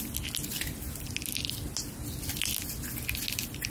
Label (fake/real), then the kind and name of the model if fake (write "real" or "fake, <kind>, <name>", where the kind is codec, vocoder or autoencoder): real